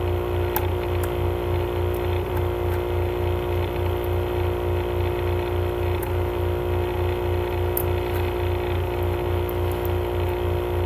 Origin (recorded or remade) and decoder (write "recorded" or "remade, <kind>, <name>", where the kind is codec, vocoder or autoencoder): recorded